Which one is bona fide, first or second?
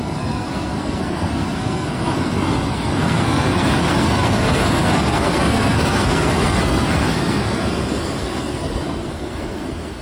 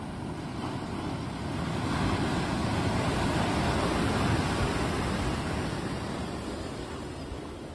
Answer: second